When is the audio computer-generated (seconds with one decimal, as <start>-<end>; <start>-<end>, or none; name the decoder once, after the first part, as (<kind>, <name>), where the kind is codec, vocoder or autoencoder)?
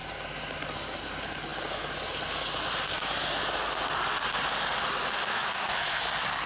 5.2-6.0 (autoencoder, DAC-VAE)